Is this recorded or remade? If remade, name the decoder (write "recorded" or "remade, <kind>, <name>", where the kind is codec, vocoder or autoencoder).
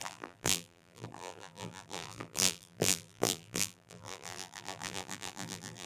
remade, vocoder, BigVGAN v2